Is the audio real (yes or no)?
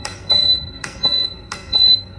no